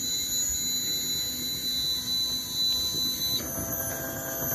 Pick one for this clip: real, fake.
real